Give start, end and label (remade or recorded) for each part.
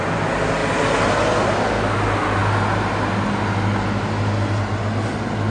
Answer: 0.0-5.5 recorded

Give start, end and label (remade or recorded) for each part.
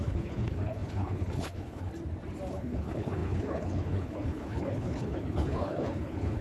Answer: 0.0-1.9 remade; 1.9-2.5 recorded; 2.5-6.4 remade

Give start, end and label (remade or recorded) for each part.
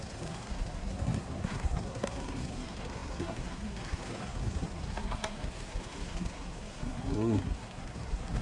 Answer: 0.0-8.4 remade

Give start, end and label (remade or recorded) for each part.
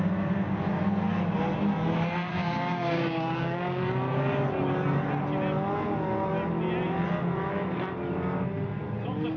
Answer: 0.0-2.3 recorded; 2.3-3.8 remade; 3.8-9.4 recorded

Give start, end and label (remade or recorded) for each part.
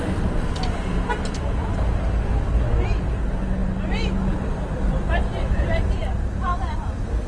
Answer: 0.0-7.3 recorded